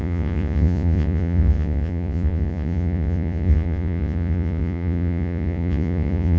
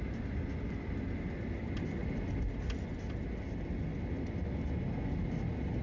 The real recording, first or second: second